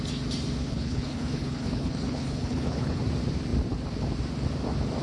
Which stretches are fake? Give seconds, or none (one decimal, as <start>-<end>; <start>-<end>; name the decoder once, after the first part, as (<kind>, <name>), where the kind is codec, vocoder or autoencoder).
0.6-3.0 (codec, HILCodec)